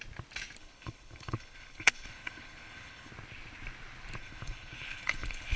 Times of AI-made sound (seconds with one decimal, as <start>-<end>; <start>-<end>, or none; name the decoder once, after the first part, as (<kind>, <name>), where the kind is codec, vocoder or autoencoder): 0.6-3.1 (codec, HILCodec); 4.2-5.6